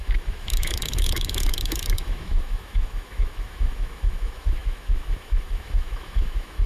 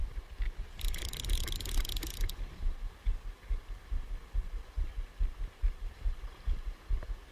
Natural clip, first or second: second